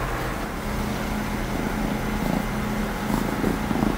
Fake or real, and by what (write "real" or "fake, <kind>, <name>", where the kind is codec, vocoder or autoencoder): real